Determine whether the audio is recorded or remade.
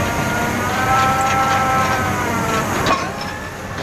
remade